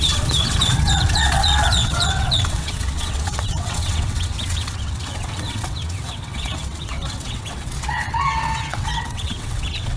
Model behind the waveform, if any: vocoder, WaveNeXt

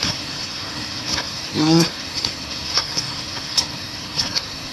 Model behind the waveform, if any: codec, SNAC